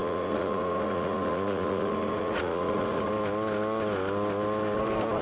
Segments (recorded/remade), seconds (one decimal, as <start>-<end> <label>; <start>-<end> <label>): 0.0-3.1 remade; 3.1-5.2 recorded